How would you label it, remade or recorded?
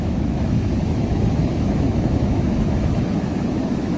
remade